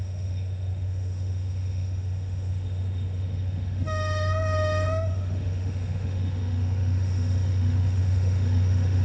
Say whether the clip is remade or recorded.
remade